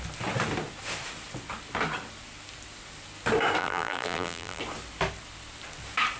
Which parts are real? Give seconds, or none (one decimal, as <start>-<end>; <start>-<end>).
0.0-3.6; 4.6-6.2